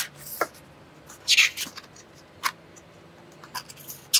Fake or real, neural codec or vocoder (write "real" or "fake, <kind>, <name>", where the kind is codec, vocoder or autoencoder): real